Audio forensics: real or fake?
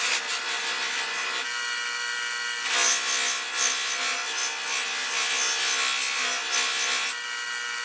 real